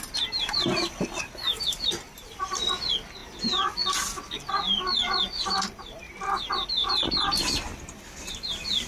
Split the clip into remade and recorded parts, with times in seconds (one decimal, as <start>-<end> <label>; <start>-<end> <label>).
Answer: 0.0-8.9 recorded